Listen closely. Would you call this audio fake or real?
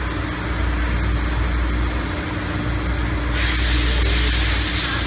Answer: real